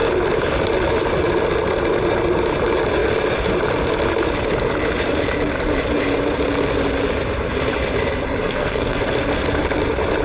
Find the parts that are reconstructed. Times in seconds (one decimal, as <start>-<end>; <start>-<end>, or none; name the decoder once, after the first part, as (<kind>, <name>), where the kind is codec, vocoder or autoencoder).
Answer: 8.4-9.0 (codec, SNAC)